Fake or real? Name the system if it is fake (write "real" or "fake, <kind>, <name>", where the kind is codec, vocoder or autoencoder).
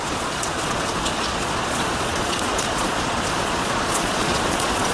fake, vocoder, Vocos